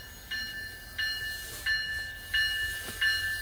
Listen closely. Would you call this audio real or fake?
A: real